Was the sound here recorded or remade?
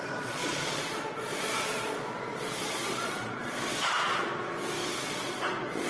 remade